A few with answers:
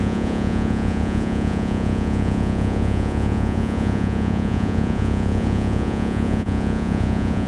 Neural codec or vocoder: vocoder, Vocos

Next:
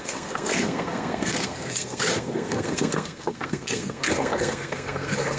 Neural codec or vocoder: codec, SNAC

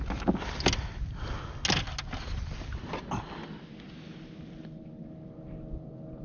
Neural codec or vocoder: none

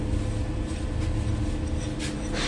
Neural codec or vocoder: none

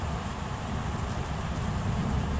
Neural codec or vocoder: none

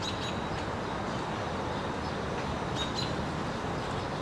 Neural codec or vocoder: none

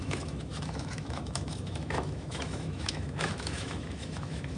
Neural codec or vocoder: autoencoder, DAC-VAE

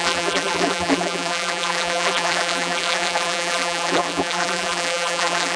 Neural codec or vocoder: vocoder, BigVGAN v2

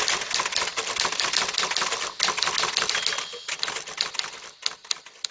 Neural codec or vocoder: none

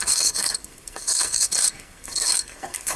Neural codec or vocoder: codec, SNAC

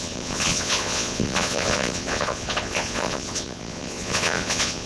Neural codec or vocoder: vocoder, Vocos